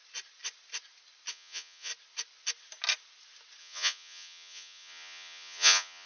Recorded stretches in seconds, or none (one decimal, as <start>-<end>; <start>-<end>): 0.0-1.3; 1.9-3.6